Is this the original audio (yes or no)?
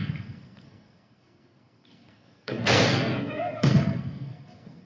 no